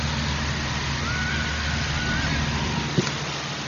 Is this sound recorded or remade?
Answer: recorded